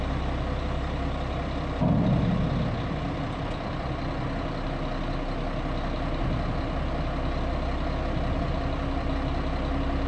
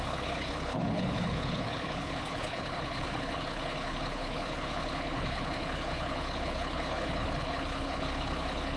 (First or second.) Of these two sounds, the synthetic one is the second